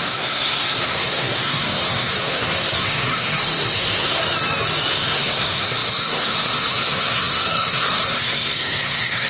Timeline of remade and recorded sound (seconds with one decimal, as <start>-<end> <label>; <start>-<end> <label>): 0.0-4.2 remade; 4.2-4.9 recorded; 4.9-9.3 remade